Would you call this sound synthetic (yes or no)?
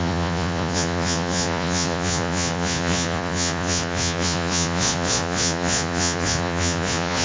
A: yes